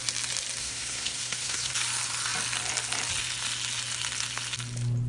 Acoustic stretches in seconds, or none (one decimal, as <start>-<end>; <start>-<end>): 0.0-0.6; 1.7-5.1